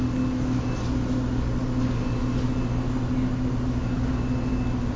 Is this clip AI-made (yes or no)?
no